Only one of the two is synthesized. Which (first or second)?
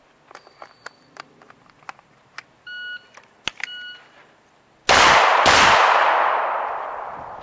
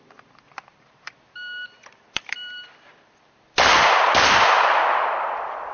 second